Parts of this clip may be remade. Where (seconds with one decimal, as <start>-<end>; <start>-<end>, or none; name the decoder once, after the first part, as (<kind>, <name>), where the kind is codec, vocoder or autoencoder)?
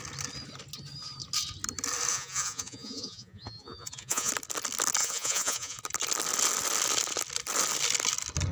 2.1-4.3 (vocoder, Vocos); 5.0-5.8